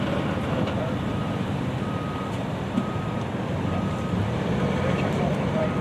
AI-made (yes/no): yes